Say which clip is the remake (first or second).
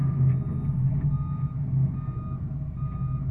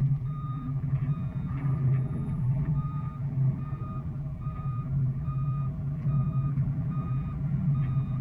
second